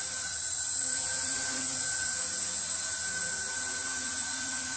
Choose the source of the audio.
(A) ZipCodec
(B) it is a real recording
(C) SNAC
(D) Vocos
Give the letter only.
D